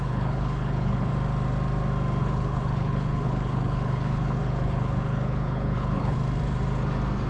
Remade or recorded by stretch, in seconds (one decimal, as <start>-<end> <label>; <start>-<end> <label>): 0.0-1.1 remade; 1.1-2.2 recorded; 2.2-6.2 remade; 6.2-7.3 recorded